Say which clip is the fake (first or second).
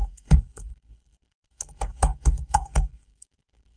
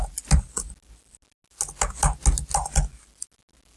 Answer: first